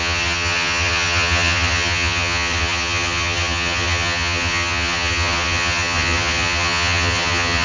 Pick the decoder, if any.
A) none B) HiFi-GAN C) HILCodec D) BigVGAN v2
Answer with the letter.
B